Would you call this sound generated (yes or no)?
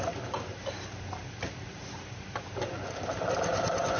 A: yes